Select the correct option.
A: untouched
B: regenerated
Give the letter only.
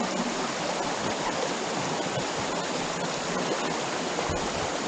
A